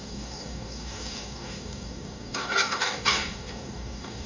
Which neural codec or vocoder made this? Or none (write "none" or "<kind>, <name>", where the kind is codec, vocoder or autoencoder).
codec, DAC